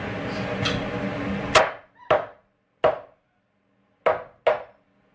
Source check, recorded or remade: recorded